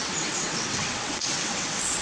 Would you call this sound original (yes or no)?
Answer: no